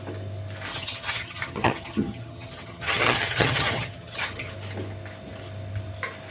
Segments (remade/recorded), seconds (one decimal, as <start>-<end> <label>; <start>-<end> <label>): 0.0-0.7 recorded; 0.7-4.5 remade; 4.5-6.3 recorded